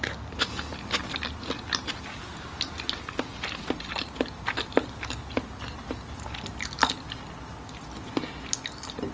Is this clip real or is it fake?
real